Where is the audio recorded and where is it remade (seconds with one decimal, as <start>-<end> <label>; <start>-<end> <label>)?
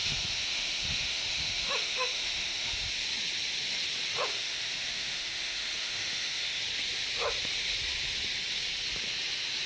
0.0-2.9 remade; 2.9-4.3 recorded; 4.3-6.6 remade; 6.6-9.7 recorded